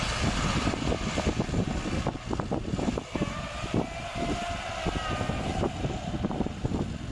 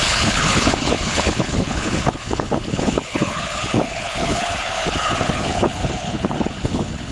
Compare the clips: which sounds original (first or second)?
first